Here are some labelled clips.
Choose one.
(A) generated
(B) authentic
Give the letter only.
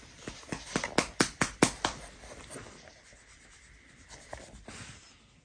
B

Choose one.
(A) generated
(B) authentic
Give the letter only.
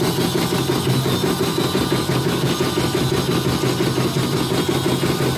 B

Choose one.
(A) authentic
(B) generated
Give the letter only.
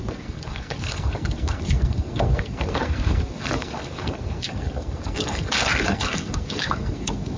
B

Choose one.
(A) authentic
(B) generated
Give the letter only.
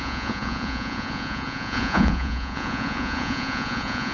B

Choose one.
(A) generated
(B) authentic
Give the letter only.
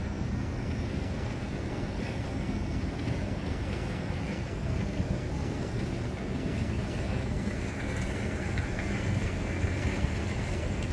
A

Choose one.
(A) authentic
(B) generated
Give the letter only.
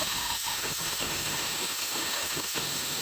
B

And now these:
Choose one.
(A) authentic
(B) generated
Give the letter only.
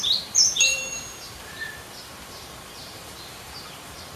B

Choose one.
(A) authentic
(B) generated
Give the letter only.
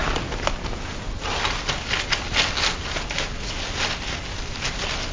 A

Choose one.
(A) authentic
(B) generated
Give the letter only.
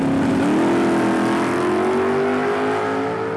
A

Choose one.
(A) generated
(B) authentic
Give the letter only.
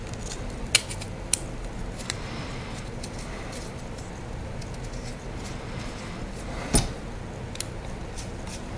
B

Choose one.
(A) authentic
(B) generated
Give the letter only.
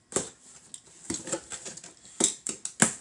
A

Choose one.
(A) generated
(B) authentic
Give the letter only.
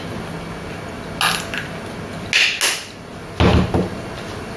B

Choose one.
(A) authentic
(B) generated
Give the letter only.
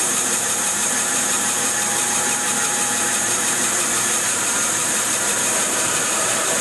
B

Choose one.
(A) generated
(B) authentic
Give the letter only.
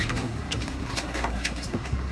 A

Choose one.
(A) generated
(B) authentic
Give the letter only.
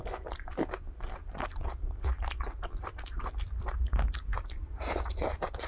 A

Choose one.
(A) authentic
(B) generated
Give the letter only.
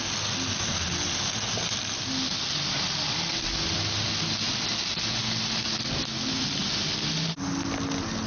A